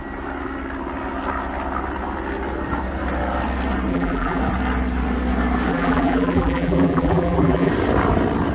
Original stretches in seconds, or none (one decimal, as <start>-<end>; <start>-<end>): 0.0-3.9; 4.4-5.7; 7.7-8.5